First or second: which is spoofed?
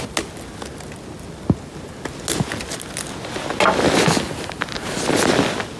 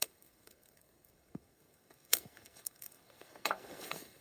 second